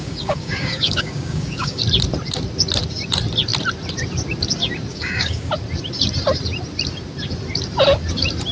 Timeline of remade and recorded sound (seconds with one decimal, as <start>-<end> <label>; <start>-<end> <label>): 0.0-1.8 remade; 1.8-4.9 recorded; 4.9-5.5 remade; 5.5-8.5 recorded